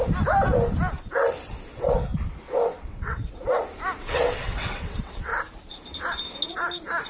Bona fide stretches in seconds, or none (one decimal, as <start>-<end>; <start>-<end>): 0.0-1.7; 2.1-2.9; 3.3-4.0; 5.3-7.1